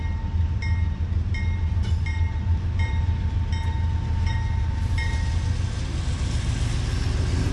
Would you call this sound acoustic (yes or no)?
yes